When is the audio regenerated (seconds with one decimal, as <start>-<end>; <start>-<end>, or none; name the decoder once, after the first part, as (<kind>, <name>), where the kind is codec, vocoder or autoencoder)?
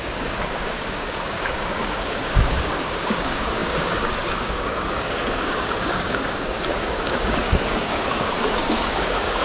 0.0-9.4 (codec, DAC)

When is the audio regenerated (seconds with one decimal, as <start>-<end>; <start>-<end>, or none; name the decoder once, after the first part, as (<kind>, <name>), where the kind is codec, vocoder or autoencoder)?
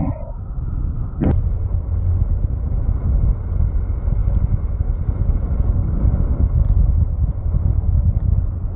none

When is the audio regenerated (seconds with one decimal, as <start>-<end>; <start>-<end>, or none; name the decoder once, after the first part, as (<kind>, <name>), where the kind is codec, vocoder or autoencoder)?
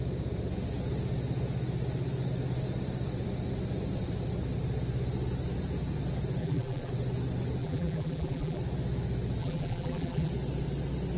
6.4-6.9 (vocoder, BigVGAN v2); 7.6-8.6; 9.4-10.3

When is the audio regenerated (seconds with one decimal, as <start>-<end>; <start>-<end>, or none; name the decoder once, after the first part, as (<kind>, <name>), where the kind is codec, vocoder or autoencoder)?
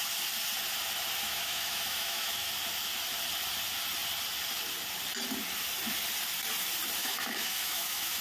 1.2-2.5 (autoencoder, DAC-VAE); 7.0-8.2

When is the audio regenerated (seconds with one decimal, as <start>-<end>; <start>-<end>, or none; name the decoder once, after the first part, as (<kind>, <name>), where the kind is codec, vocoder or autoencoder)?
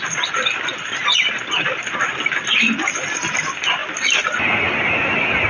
none